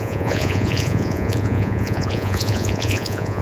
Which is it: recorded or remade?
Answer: remade